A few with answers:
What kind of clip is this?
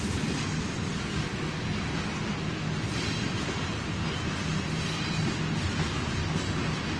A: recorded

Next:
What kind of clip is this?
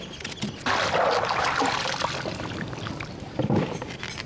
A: recorded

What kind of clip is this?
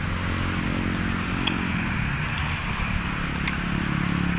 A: recorded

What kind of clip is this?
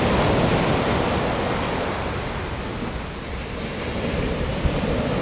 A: recorded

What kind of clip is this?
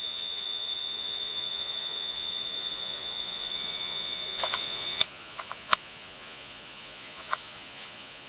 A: remade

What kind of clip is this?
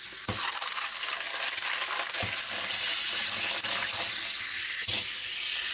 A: recorded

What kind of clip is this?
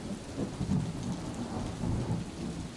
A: recorded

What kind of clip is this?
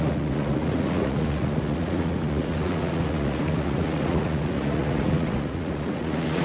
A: remade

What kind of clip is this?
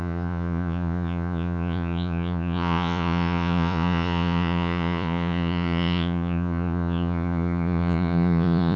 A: remade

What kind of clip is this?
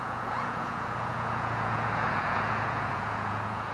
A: remade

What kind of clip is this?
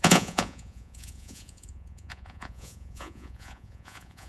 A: remade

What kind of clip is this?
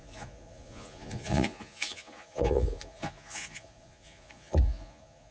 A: remade